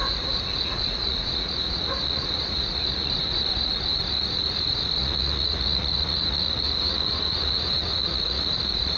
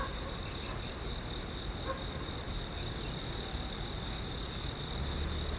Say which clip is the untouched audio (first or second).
second